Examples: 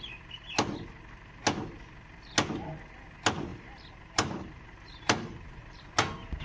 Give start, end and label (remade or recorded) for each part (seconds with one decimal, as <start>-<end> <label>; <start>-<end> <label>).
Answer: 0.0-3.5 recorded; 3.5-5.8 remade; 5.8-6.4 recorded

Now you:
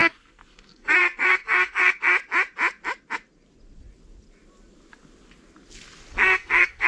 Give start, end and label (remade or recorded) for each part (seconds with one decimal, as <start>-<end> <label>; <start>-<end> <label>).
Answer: 0.0-2.1 remade; 2.1-6.1 recorded; 6.1-6.9 remade

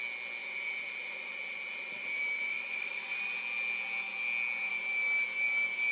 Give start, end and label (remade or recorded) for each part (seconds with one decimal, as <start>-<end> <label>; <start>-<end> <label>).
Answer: 0.0-0.4 recorded; 0.4-3.0 remade; 3.0-5.9 recorded

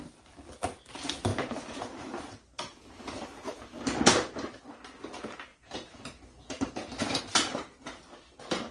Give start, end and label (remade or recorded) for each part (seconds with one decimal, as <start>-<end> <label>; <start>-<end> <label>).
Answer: 0.0-1.3 recorded; 1.3-4.6 remade; 4.6-5.5 recorded; 5.5-7.2 remade; 7.2-8.7 recorded

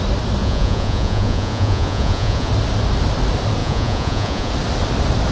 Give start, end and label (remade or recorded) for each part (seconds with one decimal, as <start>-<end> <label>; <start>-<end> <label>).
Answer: 0.0-0.4 recorded; 0.4-2.5 remade; 2.5-3.6 recorded; 3.6-4.5 remade; 4.5-5.3 recorded

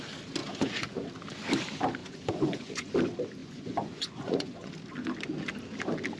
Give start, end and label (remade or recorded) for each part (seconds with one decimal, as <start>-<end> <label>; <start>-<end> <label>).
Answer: 0.0-0.4 recorded; 0.4-1.1 remade; 1.1-2.0 recorded; 2.0-2.9 remade; 2.9-3.4 recorded; 3.4-4.7 remade; 4.7-6.2 recorded

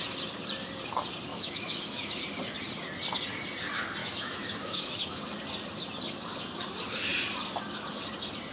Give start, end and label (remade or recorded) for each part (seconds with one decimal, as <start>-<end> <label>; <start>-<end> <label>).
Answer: 0.0-1.3 recorded; 1.3-2.2 remade; 2.2-4.0 recorded; 4.0-5.2 remade; 5.2-8.5 recorded